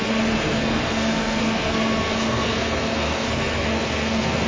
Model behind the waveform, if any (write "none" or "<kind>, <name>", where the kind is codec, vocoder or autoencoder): codec, SNAC